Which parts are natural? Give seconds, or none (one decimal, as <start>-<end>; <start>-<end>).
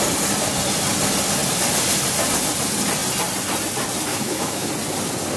0.0-4.1; 4.7-5.4